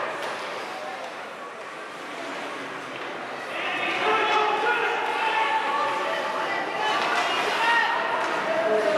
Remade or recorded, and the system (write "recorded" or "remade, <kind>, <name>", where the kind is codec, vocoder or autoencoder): recorded